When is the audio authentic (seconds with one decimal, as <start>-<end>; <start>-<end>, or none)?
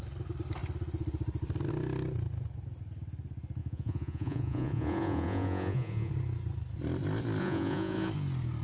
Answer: 0.0-3.6; 6.1-7.4; 8.1-8.6